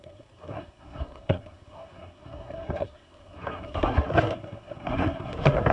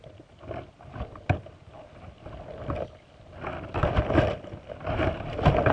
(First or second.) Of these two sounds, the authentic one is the second